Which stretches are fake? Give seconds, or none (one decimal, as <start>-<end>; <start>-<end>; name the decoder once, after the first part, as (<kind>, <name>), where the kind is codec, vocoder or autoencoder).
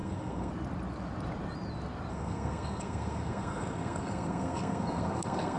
0.0-0.5 (codec, SNAC); 2.1-5.6